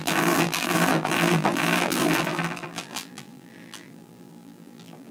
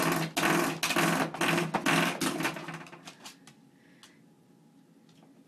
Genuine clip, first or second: second